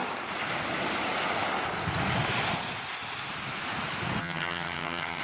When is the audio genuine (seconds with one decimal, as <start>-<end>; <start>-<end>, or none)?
0.0-4.2